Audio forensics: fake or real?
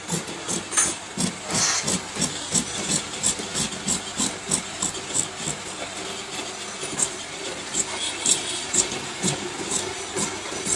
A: real